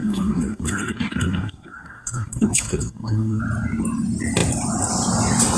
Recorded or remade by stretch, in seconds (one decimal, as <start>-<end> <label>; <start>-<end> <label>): 0.0-3.4 remade; 3.4-5.6 recorded